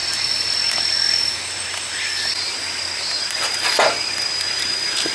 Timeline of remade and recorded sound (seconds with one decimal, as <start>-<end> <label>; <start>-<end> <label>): 0.0-5.1 recorded